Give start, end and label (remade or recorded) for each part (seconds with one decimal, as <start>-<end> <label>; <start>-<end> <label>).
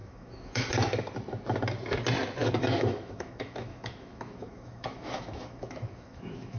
0.0-0.7 remade; 0.7-2.4 recorded; 2.4-6.6 remade